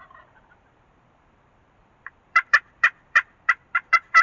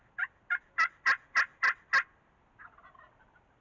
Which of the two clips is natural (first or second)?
second